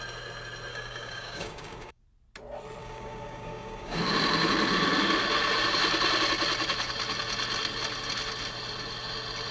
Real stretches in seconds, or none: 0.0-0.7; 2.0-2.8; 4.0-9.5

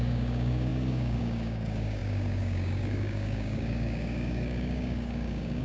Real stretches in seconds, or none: none

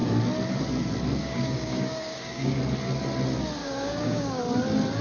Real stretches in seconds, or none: 0.0-1.2; 2.6-3.6; 4.4-5.0